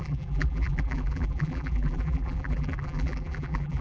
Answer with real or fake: fake